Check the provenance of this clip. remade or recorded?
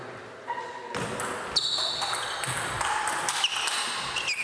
recorded